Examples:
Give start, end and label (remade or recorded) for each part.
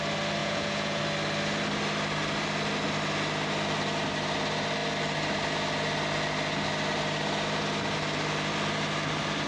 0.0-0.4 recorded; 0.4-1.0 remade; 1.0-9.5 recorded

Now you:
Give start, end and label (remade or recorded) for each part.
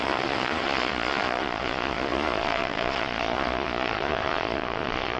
0.0-5.2 remade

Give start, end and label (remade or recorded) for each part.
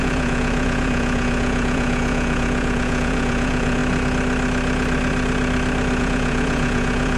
0.0-3.8 remade; 3.8-6.0 recorded; 6.0-7.2 remade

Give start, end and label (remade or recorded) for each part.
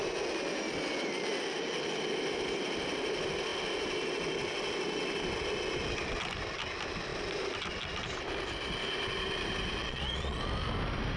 0.0-9.8 recorded; 9.8-10.4 remade; 10.4-11.2 recorded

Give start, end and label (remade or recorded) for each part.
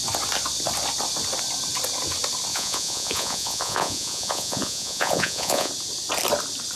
0.0-2.5 recorded; 2.5-5.7 remade; 5.7-6.8 recorded